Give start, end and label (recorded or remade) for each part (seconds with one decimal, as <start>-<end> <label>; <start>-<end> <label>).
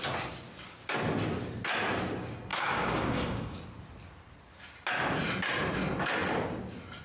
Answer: 0.0-2.5 recorded; 2.5-3.6 remade; 3.6-7.0 recorded